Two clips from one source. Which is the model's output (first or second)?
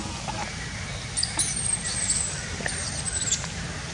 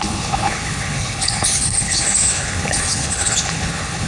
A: second